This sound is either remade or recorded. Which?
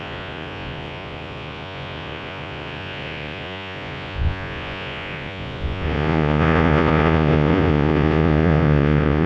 remade